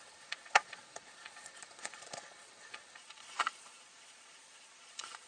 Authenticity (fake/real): fake